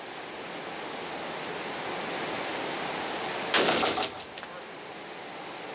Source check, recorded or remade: recorded